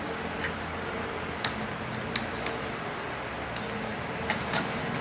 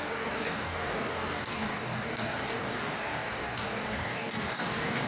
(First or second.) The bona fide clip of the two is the first